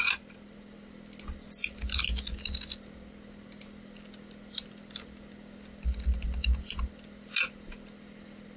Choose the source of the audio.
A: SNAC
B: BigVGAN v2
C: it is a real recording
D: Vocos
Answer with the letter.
C